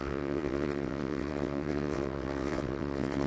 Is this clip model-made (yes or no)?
yes